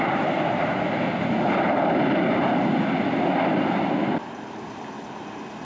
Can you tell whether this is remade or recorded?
recorded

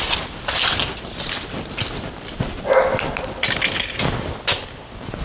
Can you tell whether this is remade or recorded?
recorded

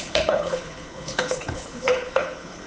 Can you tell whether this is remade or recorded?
remade